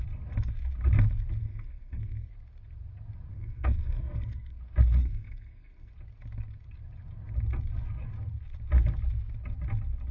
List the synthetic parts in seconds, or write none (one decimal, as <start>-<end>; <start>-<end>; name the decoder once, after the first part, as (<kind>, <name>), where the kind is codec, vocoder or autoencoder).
1.4-2.3 (codec, SNAC); 3.3-4.6; 5.0-5.9